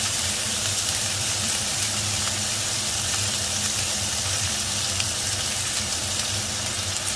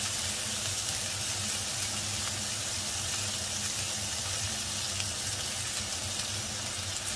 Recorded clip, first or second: second